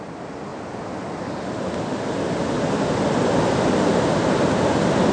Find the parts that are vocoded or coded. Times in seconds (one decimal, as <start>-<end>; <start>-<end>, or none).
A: none